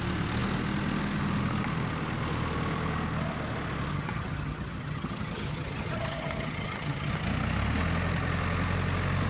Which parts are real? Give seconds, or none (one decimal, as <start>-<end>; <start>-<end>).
0.0-3.9; 7.1-9.3